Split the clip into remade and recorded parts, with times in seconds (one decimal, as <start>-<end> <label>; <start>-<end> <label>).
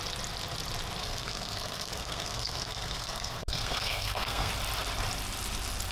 0.0-1.0 recorded; 1.0-4.5 remade; 4.5-5.9 recorded